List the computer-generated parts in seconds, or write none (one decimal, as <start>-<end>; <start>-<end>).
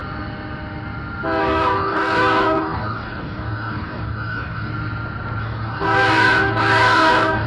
1.4-4.7; 5.4-7.5